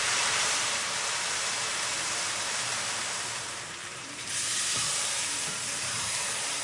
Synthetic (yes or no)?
yes